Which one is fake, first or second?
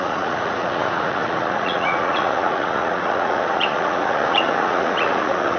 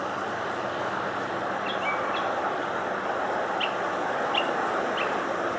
first